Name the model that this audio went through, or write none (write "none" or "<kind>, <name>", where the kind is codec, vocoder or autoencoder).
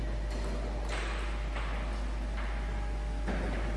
none